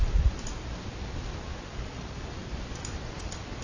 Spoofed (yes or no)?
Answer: no